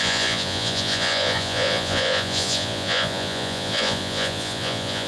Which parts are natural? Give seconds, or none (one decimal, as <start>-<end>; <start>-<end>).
none